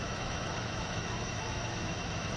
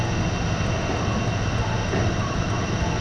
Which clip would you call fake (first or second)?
first